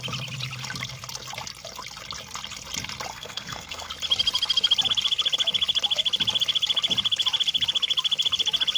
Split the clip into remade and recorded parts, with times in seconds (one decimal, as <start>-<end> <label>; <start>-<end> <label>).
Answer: 0.0-3.1 recorded; 3.1-3.9 remade; 3.9-8.8 recorded